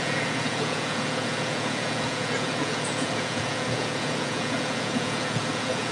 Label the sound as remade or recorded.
remade